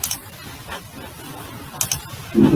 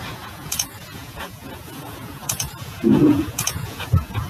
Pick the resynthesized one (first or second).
second